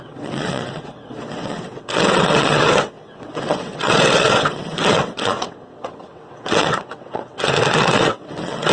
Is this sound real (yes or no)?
no